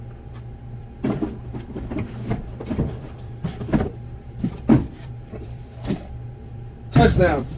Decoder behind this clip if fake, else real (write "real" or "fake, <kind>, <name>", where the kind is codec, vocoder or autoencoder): fake, vocoder, BigVGAN v2